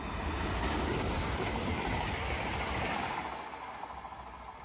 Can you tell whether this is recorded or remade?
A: recorded